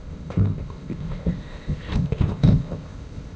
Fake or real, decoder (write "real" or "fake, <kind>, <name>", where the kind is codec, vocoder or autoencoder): fake, codec, ZipCodec